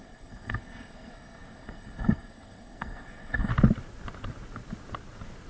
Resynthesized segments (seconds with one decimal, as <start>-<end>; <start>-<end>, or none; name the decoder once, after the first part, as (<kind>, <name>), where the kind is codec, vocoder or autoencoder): 0.0-3.5 (codec, SNAC)